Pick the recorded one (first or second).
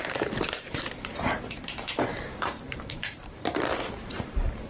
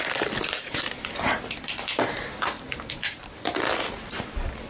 second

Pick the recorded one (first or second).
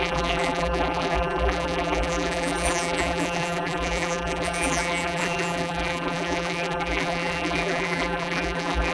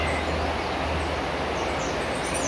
second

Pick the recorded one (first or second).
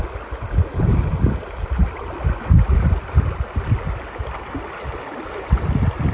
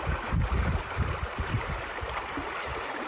first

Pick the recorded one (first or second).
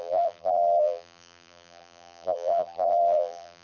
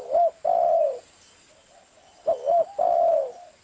second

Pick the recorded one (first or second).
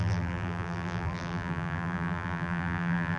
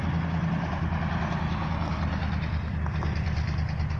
second